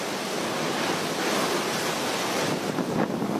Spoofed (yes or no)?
no